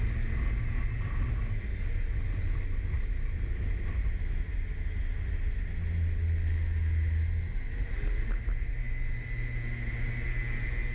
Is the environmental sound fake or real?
real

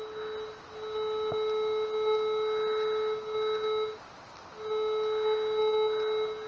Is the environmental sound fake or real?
real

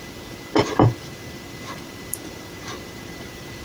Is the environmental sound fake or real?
fake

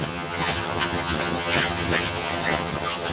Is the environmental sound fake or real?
fake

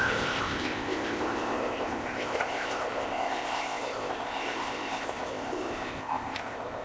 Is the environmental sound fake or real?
fake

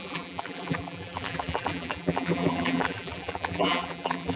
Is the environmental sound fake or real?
fake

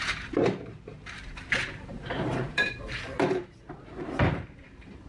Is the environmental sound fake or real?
fake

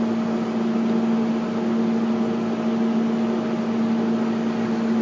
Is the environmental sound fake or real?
real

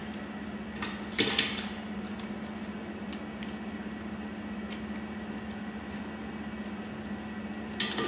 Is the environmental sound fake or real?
real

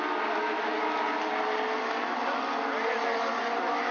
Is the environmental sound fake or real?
real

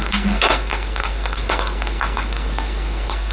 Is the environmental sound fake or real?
fake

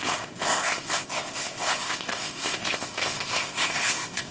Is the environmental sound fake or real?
fake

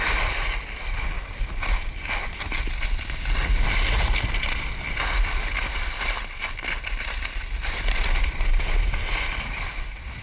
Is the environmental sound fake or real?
real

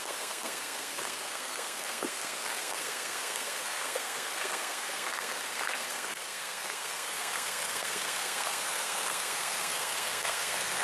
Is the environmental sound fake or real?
fake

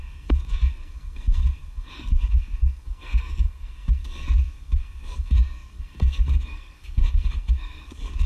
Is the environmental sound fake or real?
fake